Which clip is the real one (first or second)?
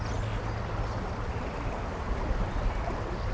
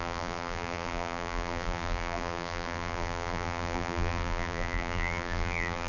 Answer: first